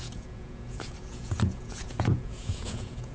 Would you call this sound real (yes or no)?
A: no